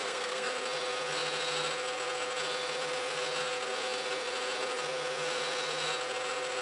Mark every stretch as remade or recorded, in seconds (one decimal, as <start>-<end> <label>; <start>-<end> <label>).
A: 0.0-0.5 remade; 0.5-6.6 recorded